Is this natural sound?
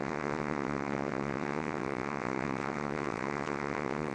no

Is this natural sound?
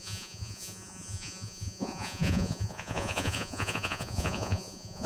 no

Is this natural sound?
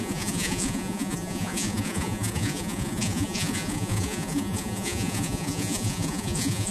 no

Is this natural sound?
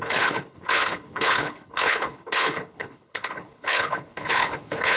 no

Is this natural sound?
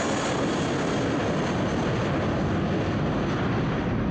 yes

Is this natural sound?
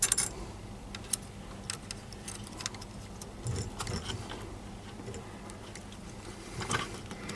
yes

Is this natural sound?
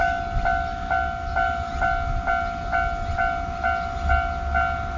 yes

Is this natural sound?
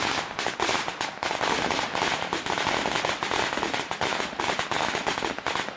yes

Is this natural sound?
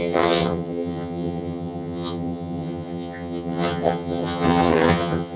no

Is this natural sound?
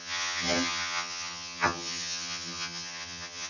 no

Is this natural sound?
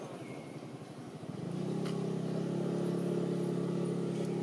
yes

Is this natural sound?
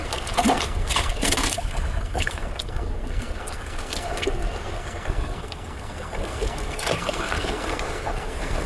no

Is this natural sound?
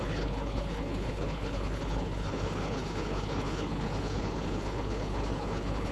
no